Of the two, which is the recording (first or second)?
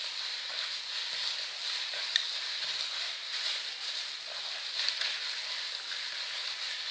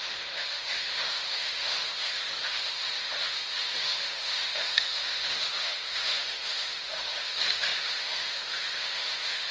first